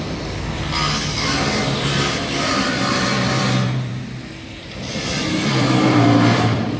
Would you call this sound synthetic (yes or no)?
yes